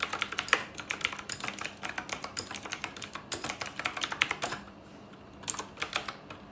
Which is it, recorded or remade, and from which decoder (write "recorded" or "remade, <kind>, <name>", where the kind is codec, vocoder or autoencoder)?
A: recorded